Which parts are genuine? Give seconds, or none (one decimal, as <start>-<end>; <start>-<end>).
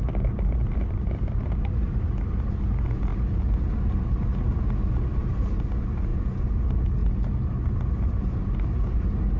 0.0-6.1; 6.6-9.4